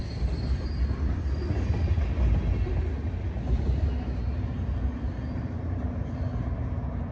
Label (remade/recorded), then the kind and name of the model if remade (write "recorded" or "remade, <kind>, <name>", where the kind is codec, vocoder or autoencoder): recorded